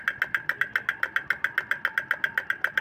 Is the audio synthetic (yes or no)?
no